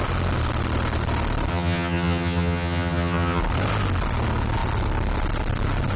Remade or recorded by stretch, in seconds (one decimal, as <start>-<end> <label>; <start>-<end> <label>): 0.0-1.5 recorded; 1.5-3.4 remade; 3.4-6.0 recorded